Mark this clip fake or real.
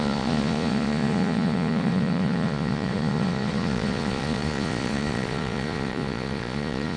fake